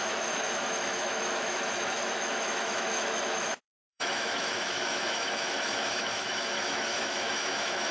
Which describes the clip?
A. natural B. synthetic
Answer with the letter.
B